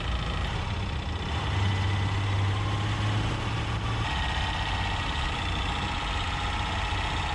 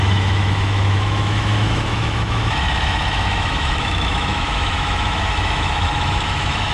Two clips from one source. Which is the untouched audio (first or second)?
first